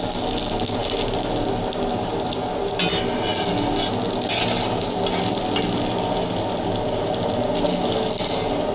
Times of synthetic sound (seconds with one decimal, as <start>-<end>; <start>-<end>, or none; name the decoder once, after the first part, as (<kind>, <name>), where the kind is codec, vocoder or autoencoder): none